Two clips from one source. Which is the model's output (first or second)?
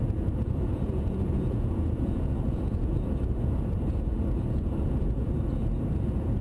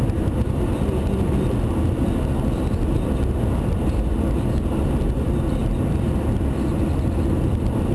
first